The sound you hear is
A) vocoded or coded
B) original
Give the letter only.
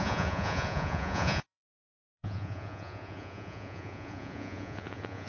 A